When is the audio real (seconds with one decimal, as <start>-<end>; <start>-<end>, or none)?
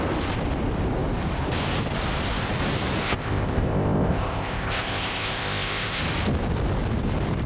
0.0-3.0; 6.0-7.5